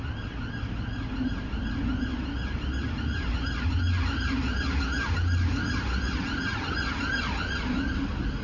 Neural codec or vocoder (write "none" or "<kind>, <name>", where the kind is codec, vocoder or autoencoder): none